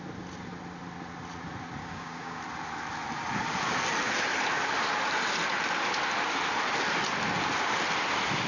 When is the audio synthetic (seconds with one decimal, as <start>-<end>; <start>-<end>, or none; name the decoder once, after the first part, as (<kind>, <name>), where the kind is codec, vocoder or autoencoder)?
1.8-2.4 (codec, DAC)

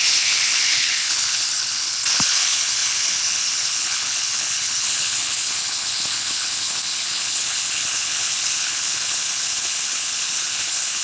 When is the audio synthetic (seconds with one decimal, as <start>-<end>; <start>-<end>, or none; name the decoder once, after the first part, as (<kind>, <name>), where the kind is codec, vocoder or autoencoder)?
0.0-11.0 (codec, HILCodec)

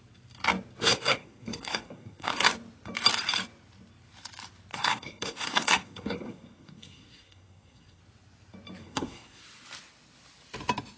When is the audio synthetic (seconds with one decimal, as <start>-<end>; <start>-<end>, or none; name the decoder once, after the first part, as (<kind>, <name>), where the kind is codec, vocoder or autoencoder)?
0.8-2.5 (codec, SNAC); 4.7-8.0; 8.8-9.4

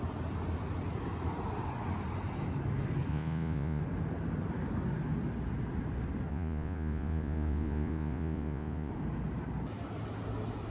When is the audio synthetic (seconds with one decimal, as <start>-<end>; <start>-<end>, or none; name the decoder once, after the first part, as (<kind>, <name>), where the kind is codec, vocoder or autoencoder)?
3.1-3.8 (vocoder, Vocos); 6.3-8.9

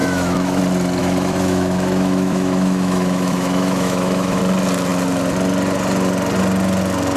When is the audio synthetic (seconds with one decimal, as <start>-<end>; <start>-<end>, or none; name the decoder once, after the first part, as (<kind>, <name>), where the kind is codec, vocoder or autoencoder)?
0.0-0.6 (autoencoder, DAC-VAE); 1.0-4.4

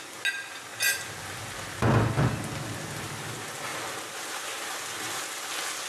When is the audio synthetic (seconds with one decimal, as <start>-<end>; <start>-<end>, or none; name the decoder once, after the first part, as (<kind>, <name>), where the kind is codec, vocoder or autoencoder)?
3.7-5.2 (vocoder, BigVGAN v2)

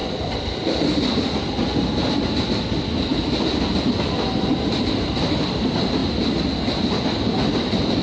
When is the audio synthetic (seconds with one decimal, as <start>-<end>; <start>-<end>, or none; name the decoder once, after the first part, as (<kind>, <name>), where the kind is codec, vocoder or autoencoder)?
0.0-3.1 (vocoder, BigVGAN v2); 4.9-6.0; 7.0-8.0